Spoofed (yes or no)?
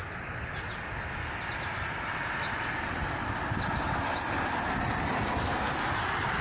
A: no